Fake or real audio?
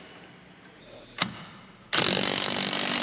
real